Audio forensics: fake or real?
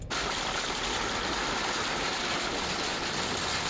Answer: real